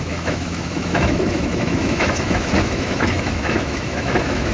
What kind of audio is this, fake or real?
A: fake